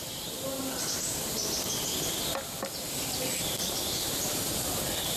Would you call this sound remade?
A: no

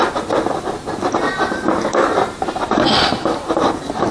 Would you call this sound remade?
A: no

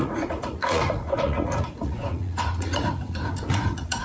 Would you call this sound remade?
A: yes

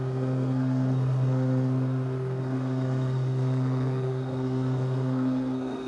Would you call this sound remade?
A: yes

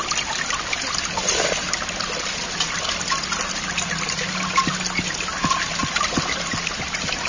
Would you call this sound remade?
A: no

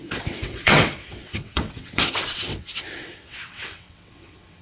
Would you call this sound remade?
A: yes